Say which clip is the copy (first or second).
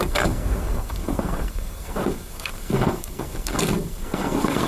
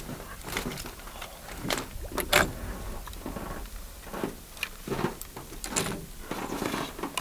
first